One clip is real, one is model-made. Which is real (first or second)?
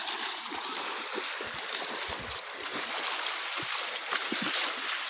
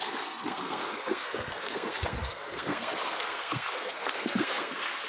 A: first